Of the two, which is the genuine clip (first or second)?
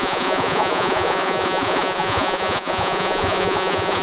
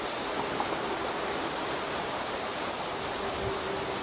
second